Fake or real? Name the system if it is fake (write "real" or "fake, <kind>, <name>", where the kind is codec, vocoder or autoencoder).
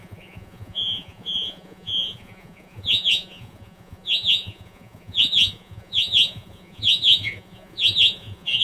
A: fake, vocoder, Vocos